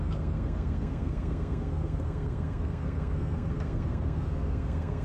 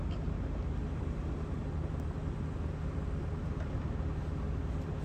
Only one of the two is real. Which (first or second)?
second